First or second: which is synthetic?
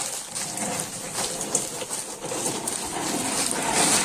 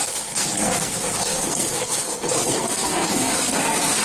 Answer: second